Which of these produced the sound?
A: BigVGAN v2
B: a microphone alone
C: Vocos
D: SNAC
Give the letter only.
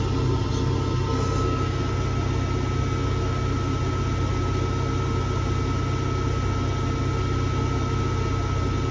B